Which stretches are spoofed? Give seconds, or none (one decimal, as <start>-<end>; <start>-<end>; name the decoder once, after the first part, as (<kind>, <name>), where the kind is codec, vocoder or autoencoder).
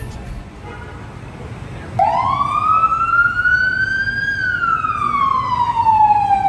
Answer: 0.0-0.8 (vocoder, Vocos)